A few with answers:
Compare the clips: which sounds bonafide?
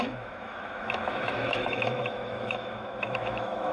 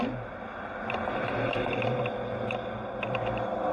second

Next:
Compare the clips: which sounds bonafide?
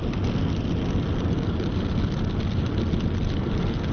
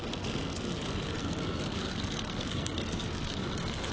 first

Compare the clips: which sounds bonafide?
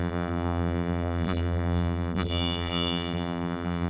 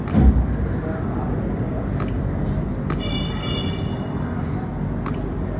second